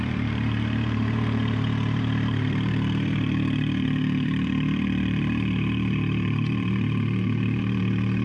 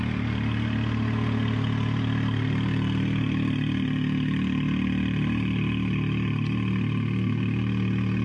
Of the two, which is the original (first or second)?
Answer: second